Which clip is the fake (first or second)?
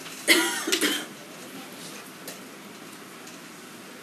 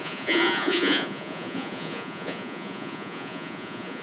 second